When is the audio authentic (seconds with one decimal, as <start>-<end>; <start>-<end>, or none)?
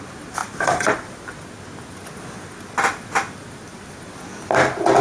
0.0-0.4; 1.1-5.0